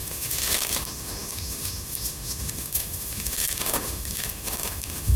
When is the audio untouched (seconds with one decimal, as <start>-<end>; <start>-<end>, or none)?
none